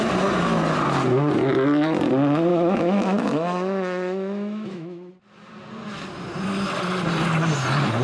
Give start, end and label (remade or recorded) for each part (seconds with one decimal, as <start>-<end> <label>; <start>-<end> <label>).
0.0-2.5 recorded; 2.5-5.1 remade; 5.1-8.0 recorded

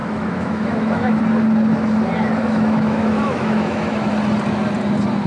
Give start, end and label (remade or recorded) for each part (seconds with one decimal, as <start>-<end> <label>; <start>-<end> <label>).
0.0-1.2 remade; 1.2-2.4 recorded; 2.4-4.1 remade; 4.1-5.3 recorded

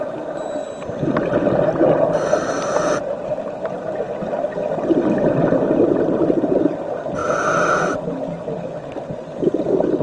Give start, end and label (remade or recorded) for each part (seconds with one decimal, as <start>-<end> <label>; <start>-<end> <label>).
0.0-10.0 recorded

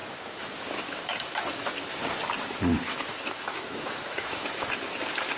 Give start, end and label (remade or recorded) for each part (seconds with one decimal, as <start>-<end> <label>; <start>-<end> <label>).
0.0-2.0 remade; 2.0-2.7 recorded; 2.7-5.0 remade; 5.0-5.4 recorded

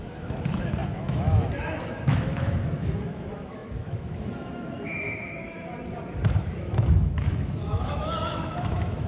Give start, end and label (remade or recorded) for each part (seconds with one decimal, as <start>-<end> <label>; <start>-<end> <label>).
0.0-5.7 remade; 5.7-6.4 recorded; 6.4-9.1 remade

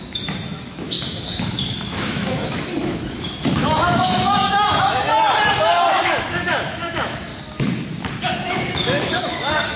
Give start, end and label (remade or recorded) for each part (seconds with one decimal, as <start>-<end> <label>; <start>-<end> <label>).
0.0-5.1 remade; 5.1-5.7 recorded; 5.7-7.3 remade; 7.3-8.2 recorded; 8.2-9.8 remade